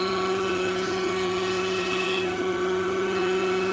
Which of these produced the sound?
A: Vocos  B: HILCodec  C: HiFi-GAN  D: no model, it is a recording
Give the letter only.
C